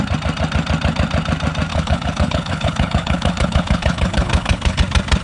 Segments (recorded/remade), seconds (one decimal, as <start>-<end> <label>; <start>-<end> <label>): 0.0-1.7 recorded; 1.7-4.8 remade; 4.8-5.2 recorded

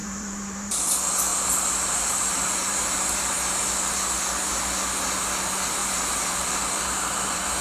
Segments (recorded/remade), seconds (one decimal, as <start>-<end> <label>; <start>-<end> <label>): 0.0-0.8 remade; 0.8-1.3 recorded; 1.3-3.6 remade; 3.6-5.8 recorded; 5.8-7.6 remade

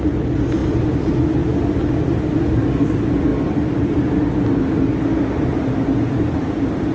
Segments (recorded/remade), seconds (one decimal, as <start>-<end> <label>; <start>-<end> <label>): 0.0-0.6 recorded; 0.6-1.1 remade; 1.1-6.9 recorded

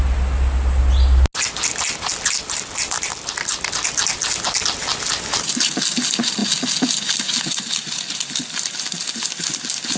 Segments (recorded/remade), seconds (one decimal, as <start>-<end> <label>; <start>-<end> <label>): 0.0-10.0 recorded

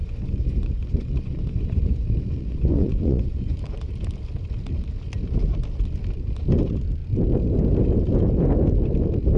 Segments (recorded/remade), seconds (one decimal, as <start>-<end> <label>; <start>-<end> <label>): 0.0-3.6 remade; 3.6-9.4 recorded

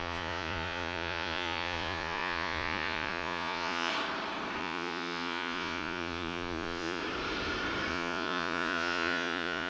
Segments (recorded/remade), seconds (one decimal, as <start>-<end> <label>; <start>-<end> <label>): 0.0-3.9 remade; 3.9-4.6 recorded; 4.6-7.0 remade; 7.0-7.9 recorded; 7.9-9.7 remade